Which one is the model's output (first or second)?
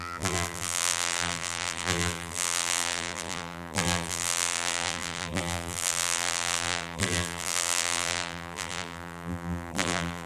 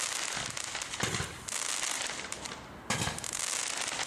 first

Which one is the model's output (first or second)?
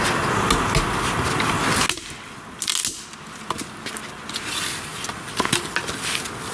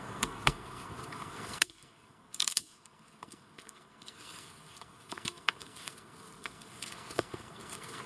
second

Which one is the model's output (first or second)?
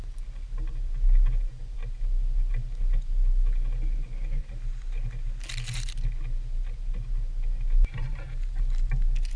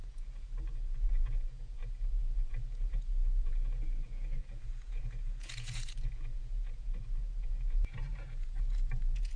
second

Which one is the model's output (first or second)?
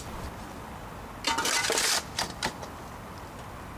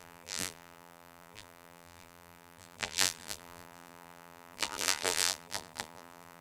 second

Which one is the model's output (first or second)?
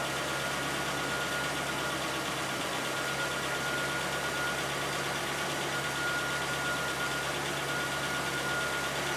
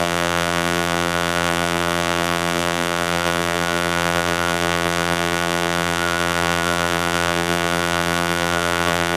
second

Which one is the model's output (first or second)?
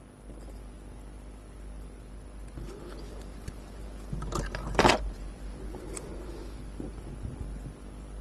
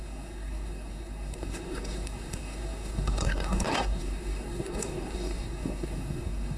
second